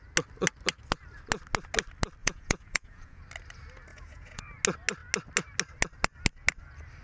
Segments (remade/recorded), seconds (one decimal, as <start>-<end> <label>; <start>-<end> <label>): 0.0-2.2 recorded; 2.2-3.2 remade; 3.2-3.9 recorded; 3.9-4.4 remade; 4.4-7.0 recorded

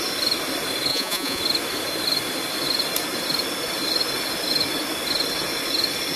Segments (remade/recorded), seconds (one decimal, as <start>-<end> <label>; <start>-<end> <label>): 0.0-0.9 recorded; 0.9-1.4 remade; 1.4-6.2 recorded

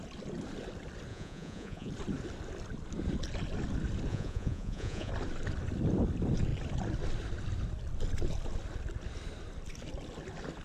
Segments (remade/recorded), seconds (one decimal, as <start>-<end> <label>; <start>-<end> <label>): 0.0-1.1 recorded; 1.1-1.9 remade; 1.9-4.1 recorded; 4.1-5.1 remade; 5.1-10.6 recorded

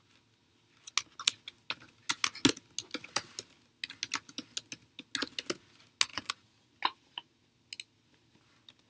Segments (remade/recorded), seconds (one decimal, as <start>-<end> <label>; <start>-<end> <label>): 0.0-6.1 recorded; 6.1-6.7 remade; 6.7-8.9 recorded

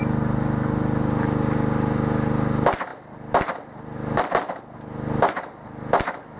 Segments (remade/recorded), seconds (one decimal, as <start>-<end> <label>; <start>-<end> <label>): 0.0-6.4 recorded

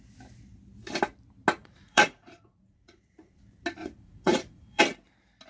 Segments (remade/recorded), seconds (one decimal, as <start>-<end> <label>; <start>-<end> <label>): 0.0-1.6 recorded; 1.6-3.3 remade; 3.3-3.8 recorded; 3.8-4.8 remade; 4.8-5.5 recorded

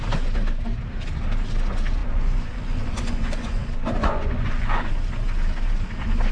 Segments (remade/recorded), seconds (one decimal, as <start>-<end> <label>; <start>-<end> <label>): 0.0-2.0 recorded; 2.0-4.9 remade; 4.9-6.3 recorded

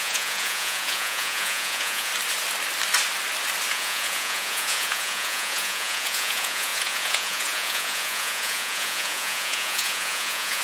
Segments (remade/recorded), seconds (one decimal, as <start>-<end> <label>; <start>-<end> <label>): 0.0-2.1 remade; 2.1-3.7 recorded; 3.7-10.6 remade